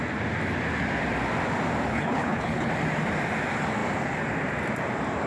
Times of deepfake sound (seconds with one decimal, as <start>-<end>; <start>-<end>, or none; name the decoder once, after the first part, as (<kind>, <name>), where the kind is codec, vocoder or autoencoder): 1.9-2.7 (codec, HILCodec)

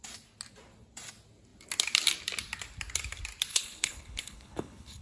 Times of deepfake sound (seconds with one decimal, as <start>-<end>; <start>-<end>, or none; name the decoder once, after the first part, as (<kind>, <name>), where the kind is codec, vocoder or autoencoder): 3.5-5.0 (codec, HILCodec)

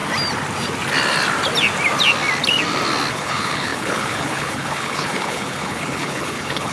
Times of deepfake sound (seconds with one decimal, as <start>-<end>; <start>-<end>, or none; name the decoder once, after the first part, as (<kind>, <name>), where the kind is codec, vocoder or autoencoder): 3.1-6.7 (codec, HILCodec)

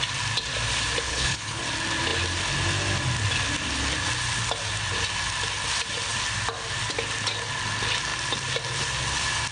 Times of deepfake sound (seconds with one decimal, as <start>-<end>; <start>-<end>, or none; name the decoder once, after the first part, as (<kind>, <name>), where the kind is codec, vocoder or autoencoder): 1.1-1.6 (codec, HILCodec)

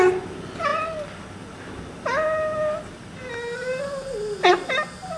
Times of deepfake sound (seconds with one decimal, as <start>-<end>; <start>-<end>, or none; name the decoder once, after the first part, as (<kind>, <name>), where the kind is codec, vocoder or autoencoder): none

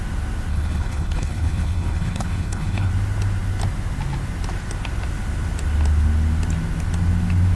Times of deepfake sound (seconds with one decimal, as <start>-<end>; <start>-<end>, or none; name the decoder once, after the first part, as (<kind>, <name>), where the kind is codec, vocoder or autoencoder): 0.5-2.9 (codec, HILCodec)